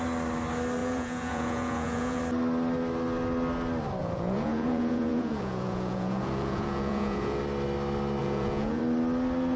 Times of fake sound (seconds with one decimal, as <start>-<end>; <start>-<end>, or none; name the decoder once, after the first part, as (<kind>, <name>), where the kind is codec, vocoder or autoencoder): 0.8-2.2 (vocoder, Vocos); 4.0-7.4; 8.2-8.8